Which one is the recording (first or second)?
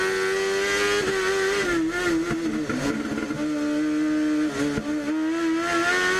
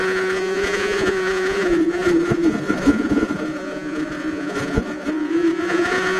first